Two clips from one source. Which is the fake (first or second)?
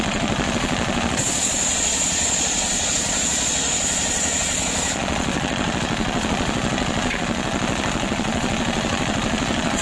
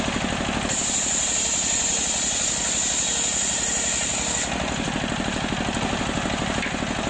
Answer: first